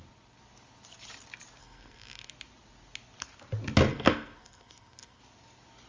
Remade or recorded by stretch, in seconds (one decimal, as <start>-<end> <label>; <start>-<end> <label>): 0.0-1.6 recorded; 1.6-2.3 remade; 2.3-3.9 recorded; 3.9-5.2 remade; 5.2-5.9 recorded